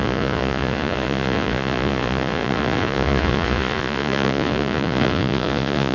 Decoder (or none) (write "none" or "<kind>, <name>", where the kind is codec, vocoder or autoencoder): vocoder, Vocos